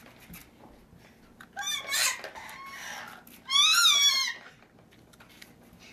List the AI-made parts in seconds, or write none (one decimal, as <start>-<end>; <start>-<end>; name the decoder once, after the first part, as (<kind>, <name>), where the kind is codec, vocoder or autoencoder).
0.0-0.4 (vocoder, BigVGAN v2); 3.9-5.9